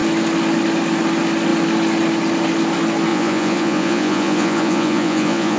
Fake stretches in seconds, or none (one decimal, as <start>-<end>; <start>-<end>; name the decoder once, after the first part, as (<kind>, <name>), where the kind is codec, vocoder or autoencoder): 3.1-5.6 (vocoder, Vocos)